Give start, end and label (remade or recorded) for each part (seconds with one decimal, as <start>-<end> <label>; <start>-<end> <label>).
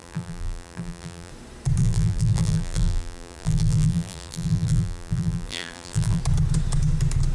0.0-1.3 remade; 1.3-1.8 recorded; 1.8-6.2 remade; 6.2-7.3 recorded